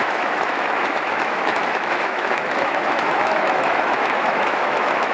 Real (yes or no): no